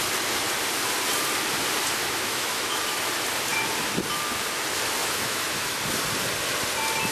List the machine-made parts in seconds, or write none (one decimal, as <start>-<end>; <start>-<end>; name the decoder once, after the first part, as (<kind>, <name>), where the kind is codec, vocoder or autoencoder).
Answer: 2.0-2.8 (autoencoder, DAC-VAE); 5.0-5.8